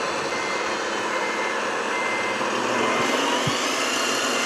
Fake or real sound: real